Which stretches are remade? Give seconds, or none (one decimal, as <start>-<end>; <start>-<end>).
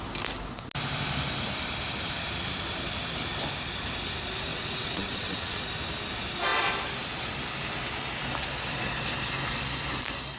4.5-5.6